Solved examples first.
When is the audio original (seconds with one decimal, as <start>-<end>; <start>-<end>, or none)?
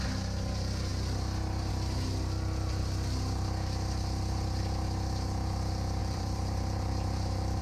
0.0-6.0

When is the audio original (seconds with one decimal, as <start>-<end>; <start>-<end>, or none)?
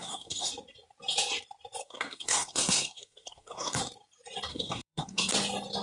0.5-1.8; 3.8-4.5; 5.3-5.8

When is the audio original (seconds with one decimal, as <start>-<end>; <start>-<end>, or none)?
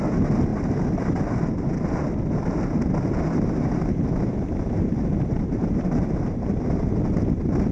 0.0-0.5; 1.0-2.4; 6.5-7.7